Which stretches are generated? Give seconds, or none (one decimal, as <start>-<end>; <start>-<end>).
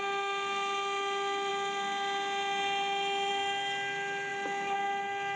none